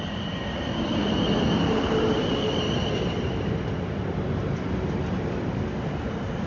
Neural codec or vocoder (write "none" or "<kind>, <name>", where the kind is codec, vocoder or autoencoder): none